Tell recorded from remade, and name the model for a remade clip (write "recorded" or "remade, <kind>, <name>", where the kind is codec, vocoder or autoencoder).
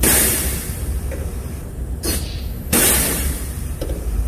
remade, vocoder, BigVGAN v2